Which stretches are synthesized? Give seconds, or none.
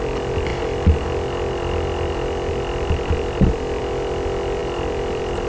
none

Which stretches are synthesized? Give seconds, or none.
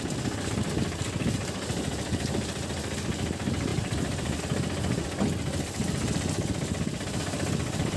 3.7-4.4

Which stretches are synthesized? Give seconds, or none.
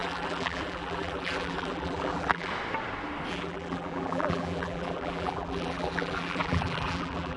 0.0-2.5; 3.3-7.4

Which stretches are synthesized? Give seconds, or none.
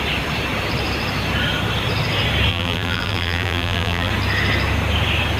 2.5-4.1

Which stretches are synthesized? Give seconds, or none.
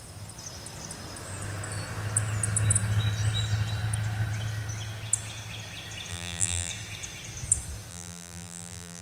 6.1-6.7; 7.9-9.0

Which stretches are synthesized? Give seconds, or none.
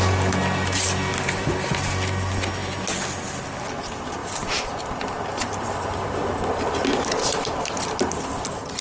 1.1-1.7; 4.2-8.1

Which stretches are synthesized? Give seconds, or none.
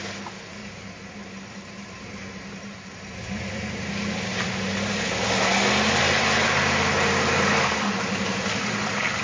0.6-3.9; 4.3-5.1